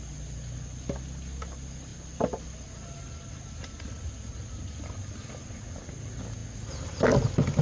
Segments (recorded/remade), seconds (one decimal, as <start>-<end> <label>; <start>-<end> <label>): 0.0-7.6 recorded